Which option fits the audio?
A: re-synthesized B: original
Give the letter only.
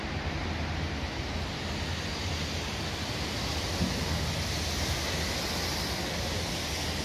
B